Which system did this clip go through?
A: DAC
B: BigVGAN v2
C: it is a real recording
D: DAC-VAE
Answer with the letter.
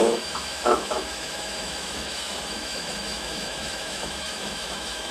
D